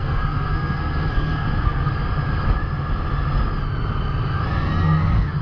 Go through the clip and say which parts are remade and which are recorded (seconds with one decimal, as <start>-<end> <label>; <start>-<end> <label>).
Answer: 0.0-1.9 remade; 1.9-4.5 recorded; 4.5-5.4 remade